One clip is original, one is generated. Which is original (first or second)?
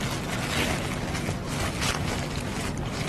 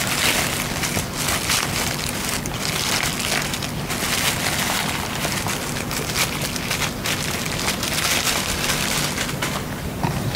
first